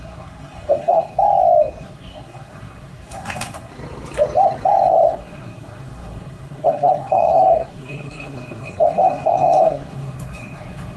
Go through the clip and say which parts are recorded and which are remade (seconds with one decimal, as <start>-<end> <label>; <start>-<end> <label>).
0.0-1.1 remade; 1.1-1.8 recorded; 1.8-3.7 remade; 3.7-4.9 recorded; 4.9-11.0 remade